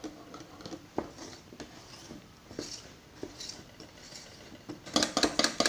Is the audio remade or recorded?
recorded